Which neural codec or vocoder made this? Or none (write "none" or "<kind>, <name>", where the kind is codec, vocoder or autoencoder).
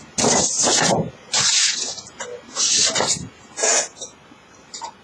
none